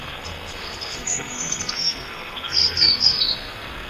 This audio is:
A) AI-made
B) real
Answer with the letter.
A